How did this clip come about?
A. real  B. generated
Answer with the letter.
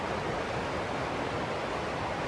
A